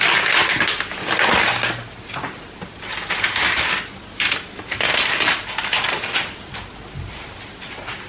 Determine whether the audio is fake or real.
real